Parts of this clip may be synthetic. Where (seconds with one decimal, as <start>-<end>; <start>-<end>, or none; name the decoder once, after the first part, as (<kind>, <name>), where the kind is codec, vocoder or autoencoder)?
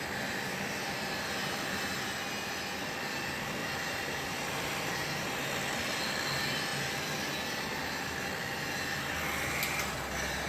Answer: 3.6-5.4 (vocoder, BigVGAN v2)